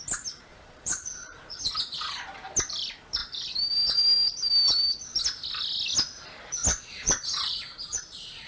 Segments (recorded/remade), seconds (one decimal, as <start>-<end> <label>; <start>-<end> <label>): 0.0-0.5 recorded; 0.5-1.7 remade; 1.7-6.7 recorded; 6.7-8.5 remade